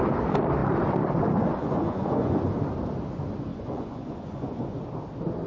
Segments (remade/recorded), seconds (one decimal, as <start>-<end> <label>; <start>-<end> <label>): 0.0-1.6 recorded; 1.6-2.5 remade; 2.5-3.5 recorded; 3.5-4.8 remade; 4.8-5.5 recorded